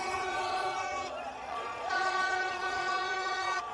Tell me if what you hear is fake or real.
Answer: fake